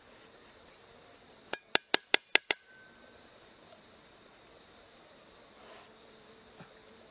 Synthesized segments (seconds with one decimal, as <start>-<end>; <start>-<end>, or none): none